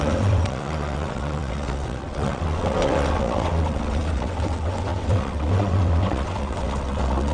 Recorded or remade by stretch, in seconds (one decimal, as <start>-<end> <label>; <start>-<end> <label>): 0.0-7.3 remade